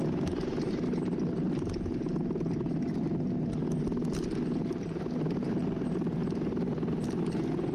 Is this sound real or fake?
real